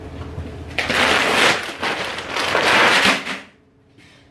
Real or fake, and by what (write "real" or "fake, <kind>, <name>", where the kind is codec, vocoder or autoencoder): real